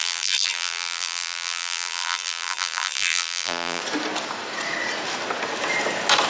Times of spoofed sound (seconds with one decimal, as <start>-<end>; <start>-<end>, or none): 0.0-3.8